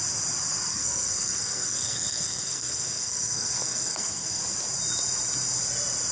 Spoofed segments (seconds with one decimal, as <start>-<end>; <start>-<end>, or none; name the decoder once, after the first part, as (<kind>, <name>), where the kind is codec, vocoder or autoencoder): 0.7-4.4 (codec, SNAC)